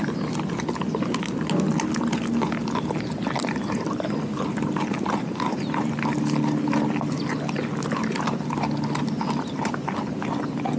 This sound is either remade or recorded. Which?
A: recorded